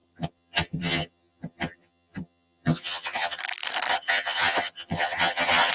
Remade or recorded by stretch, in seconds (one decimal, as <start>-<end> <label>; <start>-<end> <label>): 0.0-3.4 remade; 3.4-3.9 recorded; 3.9-5.7 remade